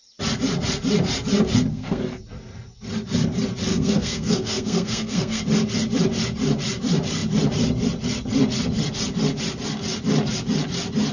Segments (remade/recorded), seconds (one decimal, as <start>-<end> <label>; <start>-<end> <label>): 0.0-1.7 recorded; 1.7-2.2 remade; 2.2-3.7 recorded; 3.7-5.4 remade; 5.4-11.1 recorded

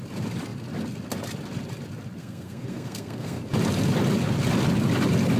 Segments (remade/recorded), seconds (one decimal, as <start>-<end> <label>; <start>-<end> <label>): 0.0-2.2 recorded; 2.2-3.4 remade; 3.4-5.4 recorded

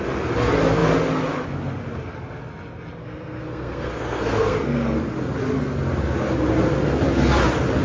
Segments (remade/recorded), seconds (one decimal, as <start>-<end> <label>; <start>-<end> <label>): 0.0-3.0 recorded; 3.0-5.0 remade; 5.0-7.8 recorded

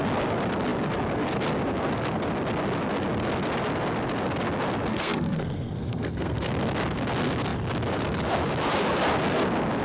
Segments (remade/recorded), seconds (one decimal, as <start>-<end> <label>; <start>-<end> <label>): 0.0-4.9 recorded; 4.9-6.5 remade; 6.5-9.8 recorded

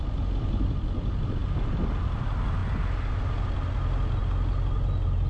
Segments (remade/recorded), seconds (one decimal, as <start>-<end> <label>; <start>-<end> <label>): 0.0-5.3 recorded